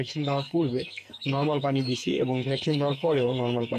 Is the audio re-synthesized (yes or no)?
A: yes